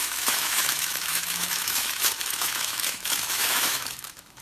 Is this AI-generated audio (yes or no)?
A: yes